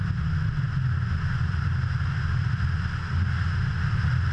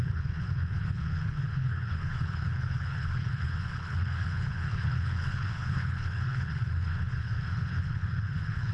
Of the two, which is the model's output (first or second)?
second